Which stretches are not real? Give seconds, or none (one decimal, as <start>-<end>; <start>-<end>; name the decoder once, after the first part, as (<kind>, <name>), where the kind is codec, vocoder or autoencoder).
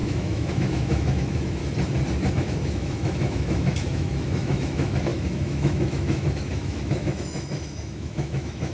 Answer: 0.0-1.6 (autoencoder, DAC-VAE); 2.3-8.7